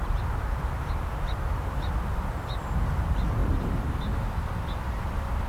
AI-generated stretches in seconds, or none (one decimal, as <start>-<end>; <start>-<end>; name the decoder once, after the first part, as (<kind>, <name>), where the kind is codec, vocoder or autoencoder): none